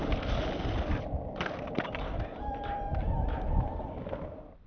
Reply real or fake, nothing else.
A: fake